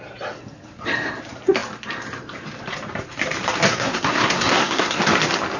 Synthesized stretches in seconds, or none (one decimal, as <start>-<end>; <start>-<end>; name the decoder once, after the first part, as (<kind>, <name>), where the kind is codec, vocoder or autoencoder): 3.7-5.0 (codec, SNAC)